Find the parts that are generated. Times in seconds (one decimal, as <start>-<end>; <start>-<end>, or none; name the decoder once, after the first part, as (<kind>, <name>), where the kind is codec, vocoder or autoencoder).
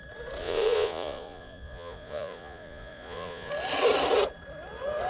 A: 0.4-3.5 (vocoder, Vocos)